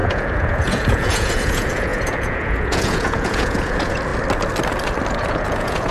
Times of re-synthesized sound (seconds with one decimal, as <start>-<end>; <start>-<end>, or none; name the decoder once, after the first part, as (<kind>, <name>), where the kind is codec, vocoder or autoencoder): 0.0-4.1 (vocoder, Vocos); 5.1-5.9